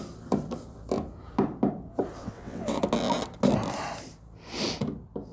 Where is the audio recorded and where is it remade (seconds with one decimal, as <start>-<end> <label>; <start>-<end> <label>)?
0.0-2.2 recorded; 2.2-2.8 remade; 2.8-5.3 recorded